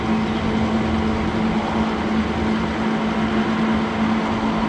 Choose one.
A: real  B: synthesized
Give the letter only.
A